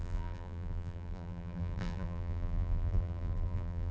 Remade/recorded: remade